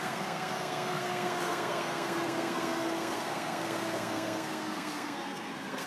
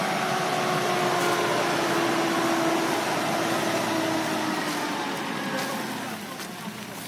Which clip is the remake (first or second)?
first